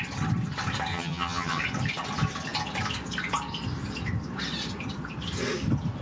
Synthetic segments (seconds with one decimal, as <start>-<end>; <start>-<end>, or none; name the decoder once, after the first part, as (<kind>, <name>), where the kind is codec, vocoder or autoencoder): 0.9-1.6 (vocoder, HiFi-GAN)